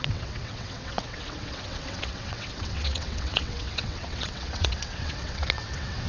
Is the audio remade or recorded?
remade